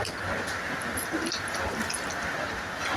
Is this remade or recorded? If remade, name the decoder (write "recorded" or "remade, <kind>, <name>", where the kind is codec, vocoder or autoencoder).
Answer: recorded